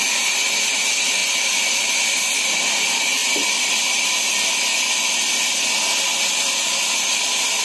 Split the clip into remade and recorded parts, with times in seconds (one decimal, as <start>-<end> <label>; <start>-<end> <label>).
0.0-7.6 recorded